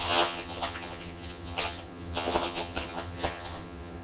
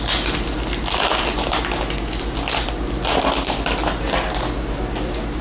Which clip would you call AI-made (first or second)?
first